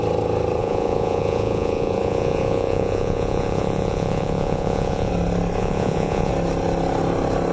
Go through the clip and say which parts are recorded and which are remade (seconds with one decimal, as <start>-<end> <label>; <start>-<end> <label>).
0.0-0.6 recorded; 0.6-5.1 remade; 5.1-5.6 recorded; 5.6-6.3 remade; 6.3-7.5 recorded